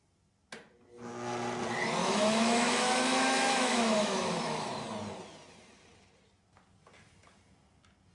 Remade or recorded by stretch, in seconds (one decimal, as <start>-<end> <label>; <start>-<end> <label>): 0.0-2.0 recorded; 2.0-4.7 remade; 4.7-8.1 recorded